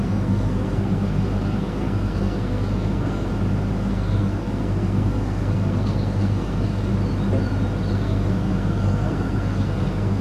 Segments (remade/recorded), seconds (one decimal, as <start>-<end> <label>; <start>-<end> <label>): 0.0-3.3 remade; 3.3-3.9 recorded; 3.9-6.9 remade; 6.9-7.9 recorded; 7.9-10.2 remade